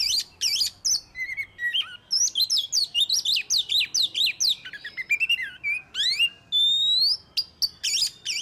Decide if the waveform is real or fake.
real